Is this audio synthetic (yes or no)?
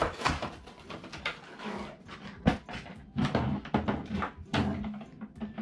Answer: no